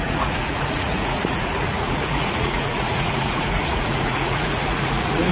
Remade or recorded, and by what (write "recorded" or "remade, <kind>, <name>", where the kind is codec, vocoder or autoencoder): remade, vocoder, Vocos